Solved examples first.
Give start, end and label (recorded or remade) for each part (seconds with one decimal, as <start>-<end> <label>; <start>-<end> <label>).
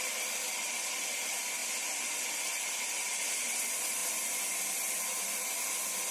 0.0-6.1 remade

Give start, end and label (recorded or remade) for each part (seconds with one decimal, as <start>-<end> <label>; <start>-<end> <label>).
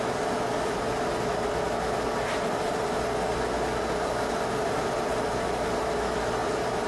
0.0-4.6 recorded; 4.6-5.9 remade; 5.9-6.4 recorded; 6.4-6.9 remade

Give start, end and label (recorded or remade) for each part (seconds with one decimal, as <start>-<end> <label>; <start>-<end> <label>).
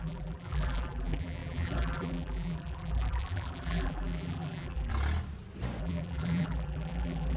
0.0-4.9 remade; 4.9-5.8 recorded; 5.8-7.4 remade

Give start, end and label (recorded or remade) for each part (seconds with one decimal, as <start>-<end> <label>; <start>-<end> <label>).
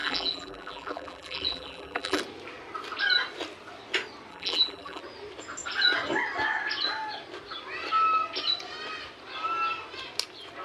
0.0-2.2 remade; 2.2-4.3 recorded; 4.3-5.0 remade; 5.0-10.6 recorded